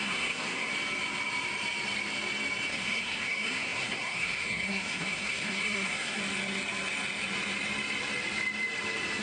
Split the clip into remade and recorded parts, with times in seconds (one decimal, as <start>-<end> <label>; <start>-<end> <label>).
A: 0.0-0.7 remade; 0.7-2.7 recorded; 2.7-6.2 remade; 6.2-9.2 recorded